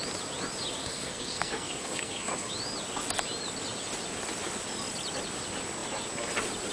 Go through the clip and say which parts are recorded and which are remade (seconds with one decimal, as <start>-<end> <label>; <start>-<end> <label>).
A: 0.0-0.8 recorded; 0.8-2.5 remade; 2.5-6.7 recorded